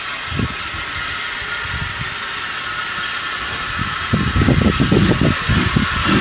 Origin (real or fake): real